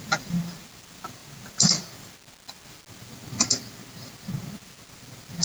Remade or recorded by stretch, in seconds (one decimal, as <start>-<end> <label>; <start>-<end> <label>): 0.0-5.4 recorded